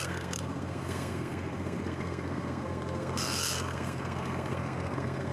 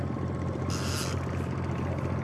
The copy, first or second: first